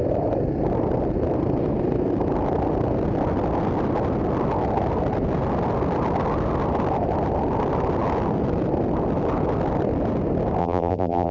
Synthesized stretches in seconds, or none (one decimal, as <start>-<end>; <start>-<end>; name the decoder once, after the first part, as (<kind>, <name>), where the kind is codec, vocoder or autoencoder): 10.6-11.3 (vocoder, BigVGAN v2)